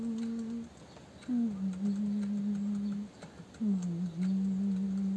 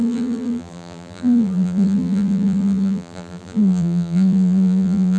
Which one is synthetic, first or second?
second